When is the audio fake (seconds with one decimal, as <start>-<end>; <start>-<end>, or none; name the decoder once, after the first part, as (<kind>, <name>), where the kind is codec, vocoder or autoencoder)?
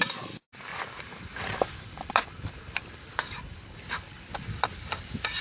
0.7-3.4 (vocoder, BigVGAN v2)